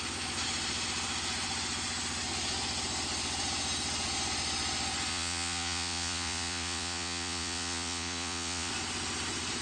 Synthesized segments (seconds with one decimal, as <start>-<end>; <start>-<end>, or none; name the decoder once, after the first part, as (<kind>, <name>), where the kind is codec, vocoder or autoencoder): 5.1-8.7 (vocoder, Vocos)